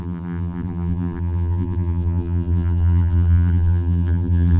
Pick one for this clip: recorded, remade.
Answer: remade